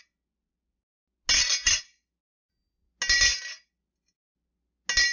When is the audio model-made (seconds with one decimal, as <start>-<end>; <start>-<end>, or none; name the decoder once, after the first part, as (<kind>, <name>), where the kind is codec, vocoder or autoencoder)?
none